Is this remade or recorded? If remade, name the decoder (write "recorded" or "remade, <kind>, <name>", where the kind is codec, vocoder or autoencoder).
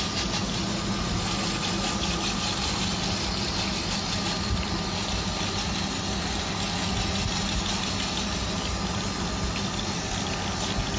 recorded